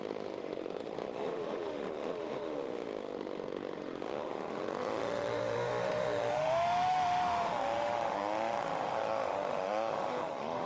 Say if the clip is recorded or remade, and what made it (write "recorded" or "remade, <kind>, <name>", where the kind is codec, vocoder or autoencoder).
remade, autoencoder, DAC-VAE